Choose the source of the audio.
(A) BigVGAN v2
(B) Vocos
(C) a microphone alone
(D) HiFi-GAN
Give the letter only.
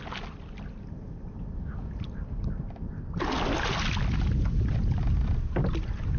C